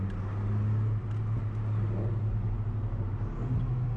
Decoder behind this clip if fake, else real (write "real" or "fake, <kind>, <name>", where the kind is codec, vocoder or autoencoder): real